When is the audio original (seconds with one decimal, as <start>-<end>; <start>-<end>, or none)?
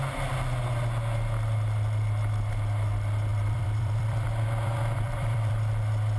0.0-3.3; 5.5-6.2